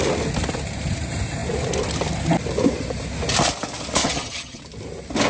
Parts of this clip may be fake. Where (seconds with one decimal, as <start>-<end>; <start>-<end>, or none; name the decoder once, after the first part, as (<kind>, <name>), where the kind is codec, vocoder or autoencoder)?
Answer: 4.0-4.6 (vocoder, HiFi-GAN)